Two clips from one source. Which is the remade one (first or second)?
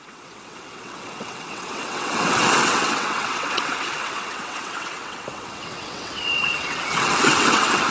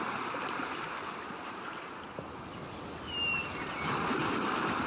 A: first